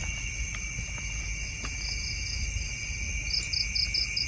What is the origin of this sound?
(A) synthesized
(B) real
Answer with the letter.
B